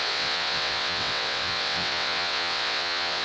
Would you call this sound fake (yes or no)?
yes